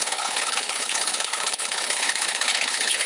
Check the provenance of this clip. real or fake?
fake